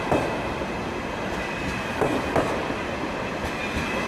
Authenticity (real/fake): real